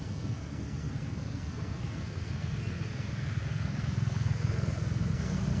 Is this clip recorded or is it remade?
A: remade